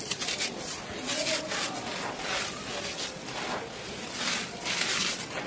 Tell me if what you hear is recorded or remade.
recorded